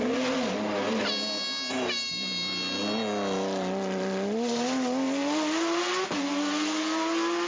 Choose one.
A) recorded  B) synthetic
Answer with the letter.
A